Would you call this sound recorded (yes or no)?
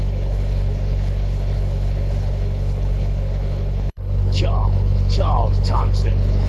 no